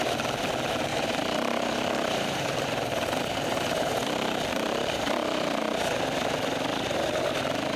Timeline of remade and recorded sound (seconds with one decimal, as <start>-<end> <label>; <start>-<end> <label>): 0.0-0.9 recorded; 0.9-5.6 remade; 5.6-7.8 recorded